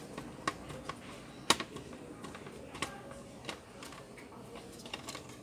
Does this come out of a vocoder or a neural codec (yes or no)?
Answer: no